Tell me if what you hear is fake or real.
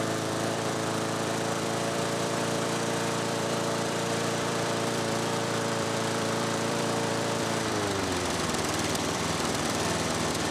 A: fake